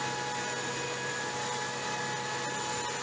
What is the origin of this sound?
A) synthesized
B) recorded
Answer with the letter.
B